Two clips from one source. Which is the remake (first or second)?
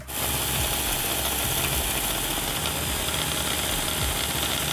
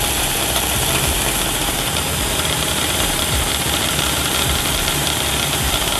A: second